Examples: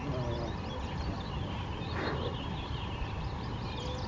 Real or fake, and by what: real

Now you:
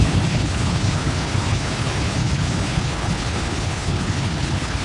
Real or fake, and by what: fake, codec, HILCodec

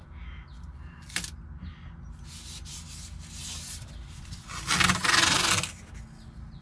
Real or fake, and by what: real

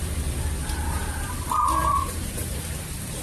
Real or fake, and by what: real